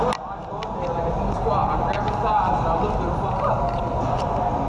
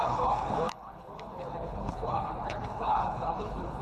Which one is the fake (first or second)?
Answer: second